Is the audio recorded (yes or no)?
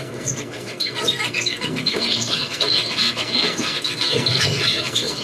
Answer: no